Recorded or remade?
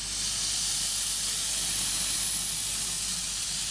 recorded